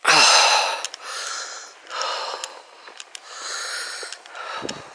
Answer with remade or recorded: recorded